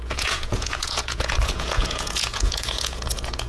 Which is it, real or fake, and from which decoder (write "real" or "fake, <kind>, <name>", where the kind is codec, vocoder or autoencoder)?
fake, vocoder, Vocos